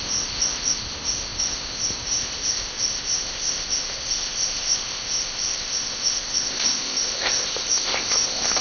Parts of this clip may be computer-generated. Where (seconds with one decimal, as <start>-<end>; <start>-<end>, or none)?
0.0-8.6